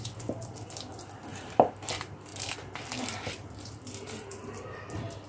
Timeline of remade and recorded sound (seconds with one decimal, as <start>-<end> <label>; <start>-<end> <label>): 0.0-1.3 recorded; 1.3-1.9 remade; 1.9-5.3 recorded